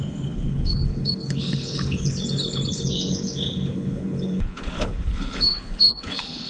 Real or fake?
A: fake